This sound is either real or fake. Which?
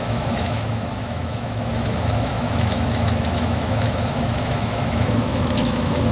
fake